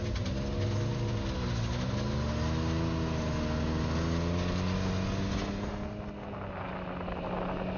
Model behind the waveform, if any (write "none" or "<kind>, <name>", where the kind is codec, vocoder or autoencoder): none